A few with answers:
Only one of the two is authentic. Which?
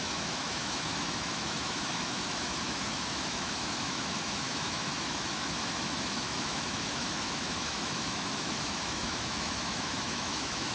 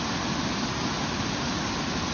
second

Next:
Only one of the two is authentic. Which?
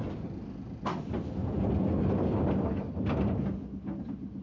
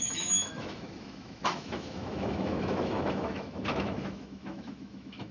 first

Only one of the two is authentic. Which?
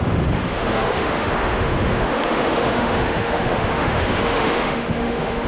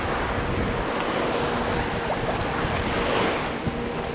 second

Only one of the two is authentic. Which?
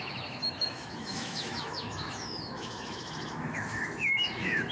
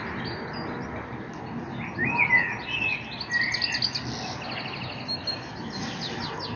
second